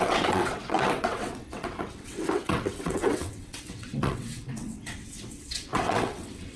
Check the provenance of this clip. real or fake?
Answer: fake